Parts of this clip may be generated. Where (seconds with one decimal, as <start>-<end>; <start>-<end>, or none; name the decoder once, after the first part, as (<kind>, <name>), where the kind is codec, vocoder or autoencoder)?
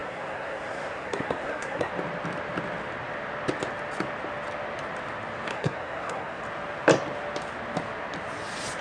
0.0-1.9 (codec, SNAC); 5.5-6.4